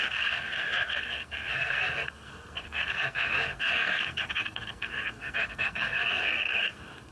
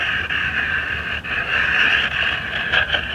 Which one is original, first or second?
second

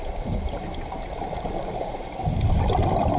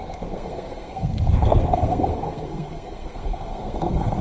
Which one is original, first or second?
first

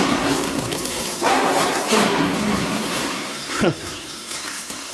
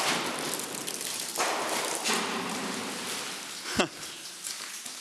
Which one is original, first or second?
second